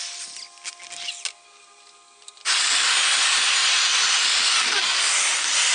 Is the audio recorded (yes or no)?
yes